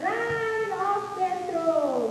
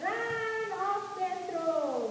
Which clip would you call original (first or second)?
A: second